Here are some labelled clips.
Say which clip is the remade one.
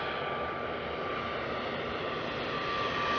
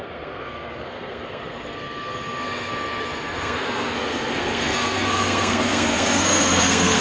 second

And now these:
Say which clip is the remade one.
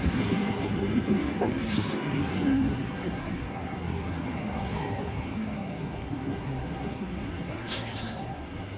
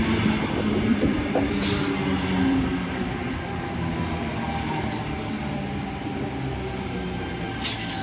first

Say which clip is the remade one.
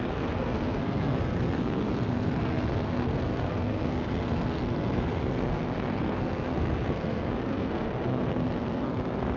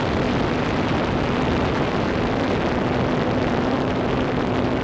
first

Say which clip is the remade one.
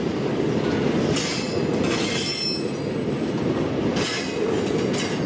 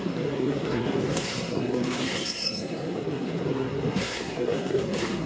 second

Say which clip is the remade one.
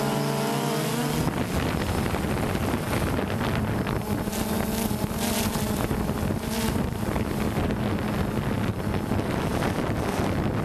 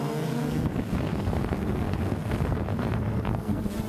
second